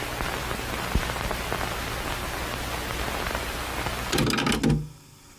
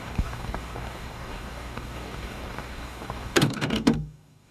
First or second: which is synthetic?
second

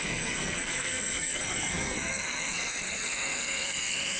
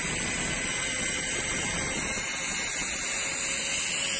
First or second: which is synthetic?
first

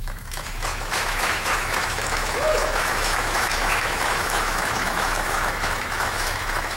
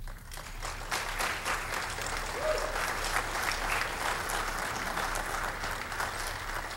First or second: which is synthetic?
first